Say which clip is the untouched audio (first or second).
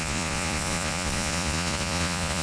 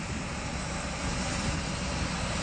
second